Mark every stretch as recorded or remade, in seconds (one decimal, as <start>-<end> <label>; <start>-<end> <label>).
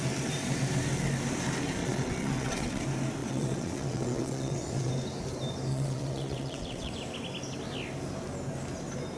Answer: 0.0-1.8 recorded; 1.8-2.8 remade; 2.8-3.2 recorded; 3.2-4.9 remade; 4.9-5.7 recorded; 5.7-6.9 remade; 6.9-9.2 recorded